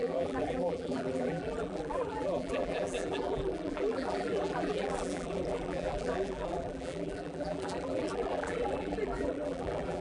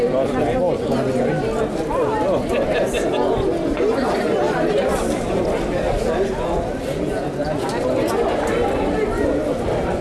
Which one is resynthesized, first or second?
first